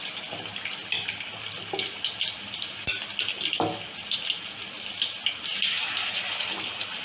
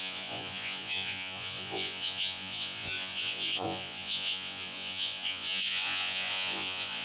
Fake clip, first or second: second